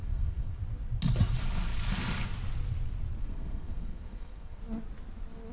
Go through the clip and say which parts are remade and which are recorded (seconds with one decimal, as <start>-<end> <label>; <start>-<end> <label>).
0.0-0.6 remade; 0.6-3.2 recorded; 3.2-4.6 remade; 4.6-5.5 recorded